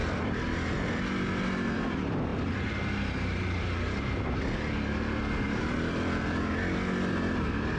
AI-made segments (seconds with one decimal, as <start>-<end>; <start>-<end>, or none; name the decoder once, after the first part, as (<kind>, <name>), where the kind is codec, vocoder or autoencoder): 0.0-1.0 (vocoder, BigVGAN v2)